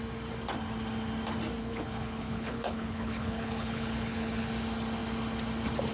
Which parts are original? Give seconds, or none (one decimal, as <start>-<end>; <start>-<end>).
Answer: 0.0-1.6; 4.5-5.9